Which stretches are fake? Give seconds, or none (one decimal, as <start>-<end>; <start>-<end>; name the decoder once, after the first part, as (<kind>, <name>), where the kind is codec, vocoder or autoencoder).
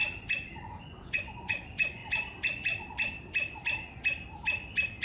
0.6-2.0 (vocoder, Vocos)